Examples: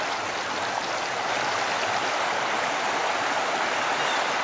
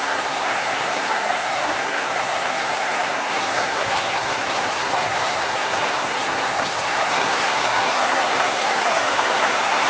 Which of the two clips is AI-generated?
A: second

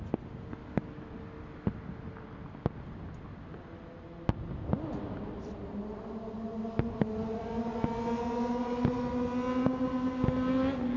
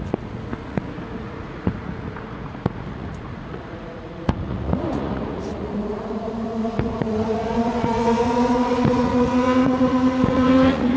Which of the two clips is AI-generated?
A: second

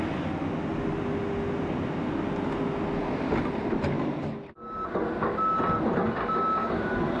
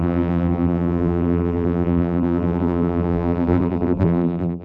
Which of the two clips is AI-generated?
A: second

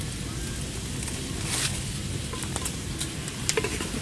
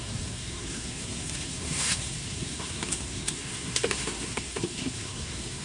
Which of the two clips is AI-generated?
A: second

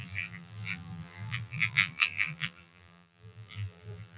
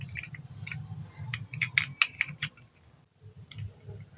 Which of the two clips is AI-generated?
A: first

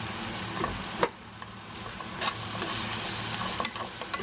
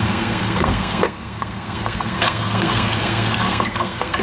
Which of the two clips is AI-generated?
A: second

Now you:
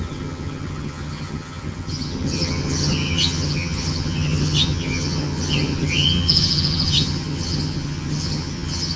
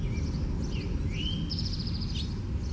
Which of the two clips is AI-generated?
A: first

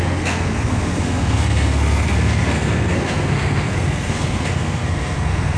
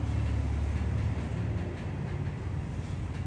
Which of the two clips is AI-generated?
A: first